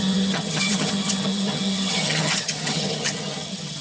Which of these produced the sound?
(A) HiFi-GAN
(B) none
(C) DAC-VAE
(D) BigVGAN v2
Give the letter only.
A